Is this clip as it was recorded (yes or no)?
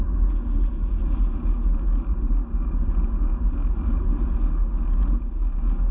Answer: yes